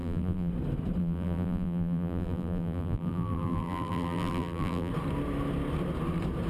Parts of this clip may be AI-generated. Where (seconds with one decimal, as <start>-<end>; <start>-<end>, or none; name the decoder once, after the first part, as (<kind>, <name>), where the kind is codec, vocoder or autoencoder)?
0.0-0.5 (vocoder, BigVGAN v2); 1.0-4.9